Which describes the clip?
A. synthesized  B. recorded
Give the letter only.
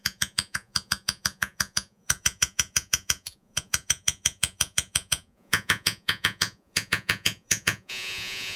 A